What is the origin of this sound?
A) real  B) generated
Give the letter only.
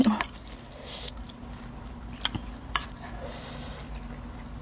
A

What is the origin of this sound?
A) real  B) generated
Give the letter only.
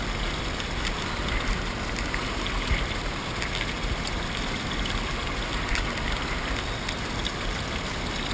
A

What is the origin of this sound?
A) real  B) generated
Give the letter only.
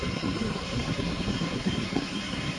B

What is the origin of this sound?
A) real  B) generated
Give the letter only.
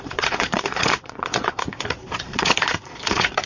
B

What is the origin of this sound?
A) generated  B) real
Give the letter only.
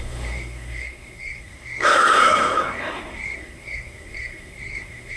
A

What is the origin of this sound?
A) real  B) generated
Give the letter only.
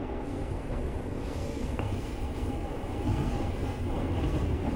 B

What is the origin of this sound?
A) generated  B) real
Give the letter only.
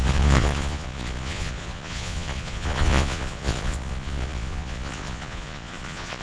A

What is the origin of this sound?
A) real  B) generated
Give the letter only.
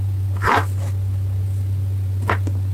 A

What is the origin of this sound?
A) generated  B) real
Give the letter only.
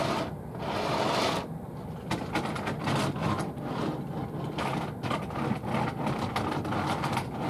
B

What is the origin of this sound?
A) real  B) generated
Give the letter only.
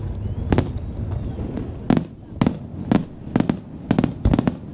A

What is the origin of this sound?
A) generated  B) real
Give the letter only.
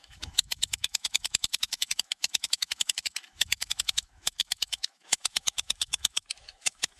A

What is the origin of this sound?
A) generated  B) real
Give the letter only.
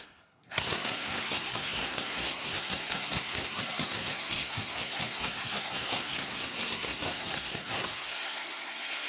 A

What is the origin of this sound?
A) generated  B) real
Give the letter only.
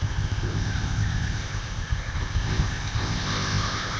A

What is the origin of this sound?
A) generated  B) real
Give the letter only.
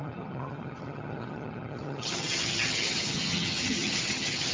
A